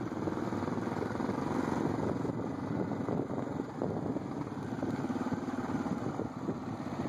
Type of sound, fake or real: real